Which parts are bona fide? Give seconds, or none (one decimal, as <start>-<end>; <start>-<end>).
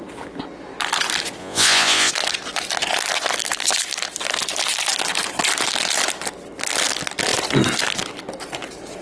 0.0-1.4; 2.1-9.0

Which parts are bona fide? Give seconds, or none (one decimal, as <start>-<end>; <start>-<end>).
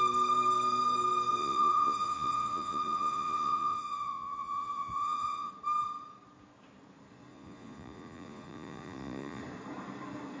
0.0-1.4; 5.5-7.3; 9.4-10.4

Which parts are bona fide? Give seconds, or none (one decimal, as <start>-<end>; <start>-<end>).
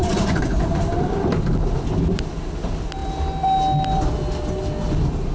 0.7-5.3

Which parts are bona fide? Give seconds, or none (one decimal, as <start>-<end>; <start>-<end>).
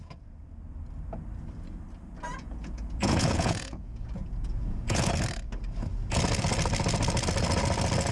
0.0-2.3; 5.1-8.1